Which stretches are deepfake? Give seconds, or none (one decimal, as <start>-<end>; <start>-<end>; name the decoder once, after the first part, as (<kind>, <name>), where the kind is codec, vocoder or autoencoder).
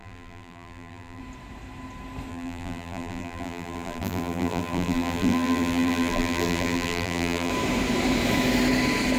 0.0-1.2 (vocoder, BigVGAN v2); 2.3-7.5